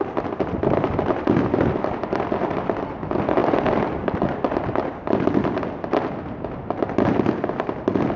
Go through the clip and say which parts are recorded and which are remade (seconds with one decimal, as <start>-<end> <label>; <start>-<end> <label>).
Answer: 0.0-8.2 recorded